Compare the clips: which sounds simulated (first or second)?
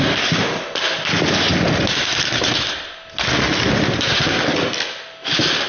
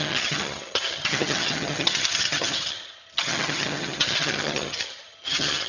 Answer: second